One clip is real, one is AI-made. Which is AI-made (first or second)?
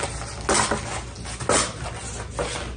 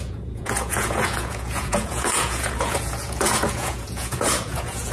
second